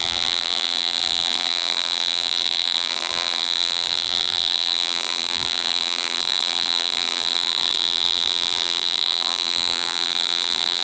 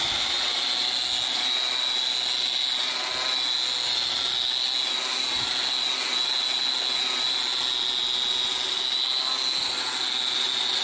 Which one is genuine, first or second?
second